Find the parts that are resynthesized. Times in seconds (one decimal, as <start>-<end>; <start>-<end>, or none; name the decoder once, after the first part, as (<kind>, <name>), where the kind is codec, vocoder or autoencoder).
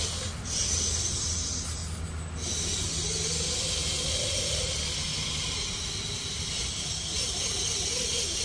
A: none